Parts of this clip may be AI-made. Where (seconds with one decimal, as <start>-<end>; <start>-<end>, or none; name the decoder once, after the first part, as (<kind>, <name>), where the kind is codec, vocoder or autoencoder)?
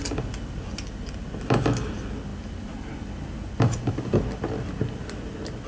none